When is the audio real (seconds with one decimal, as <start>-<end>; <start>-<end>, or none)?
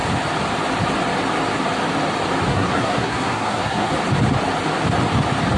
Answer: 0.0-2.5; 3.9-5.6